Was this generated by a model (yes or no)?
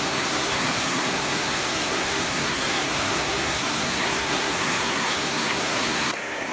yes